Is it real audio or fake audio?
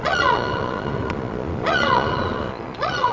fake